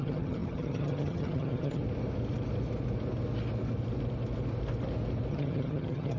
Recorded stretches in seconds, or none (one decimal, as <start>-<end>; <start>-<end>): 1.8-5.3